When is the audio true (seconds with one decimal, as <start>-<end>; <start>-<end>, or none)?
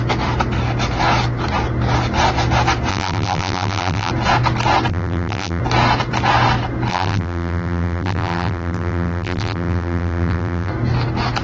0.0-2.9; 4.1-4.9; 5.6-6.9; 10.7-11.4